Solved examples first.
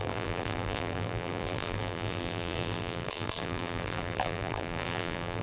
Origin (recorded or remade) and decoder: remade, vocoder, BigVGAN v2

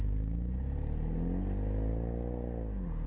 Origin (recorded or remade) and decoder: recorded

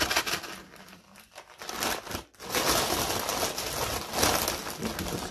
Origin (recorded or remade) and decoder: recorded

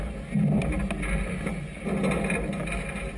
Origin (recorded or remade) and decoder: recorded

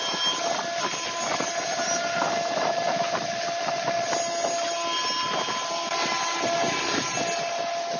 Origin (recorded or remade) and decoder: recorded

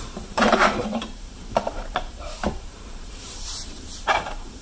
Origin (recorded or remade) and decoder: remade, vocoder, BigVGAN v2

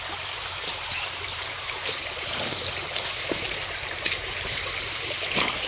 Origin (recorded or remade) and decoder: remade, vocoder, BigVGAN v2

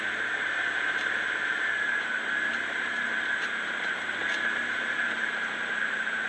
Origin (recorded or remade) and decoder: remade, vocoder, BigVGAN v2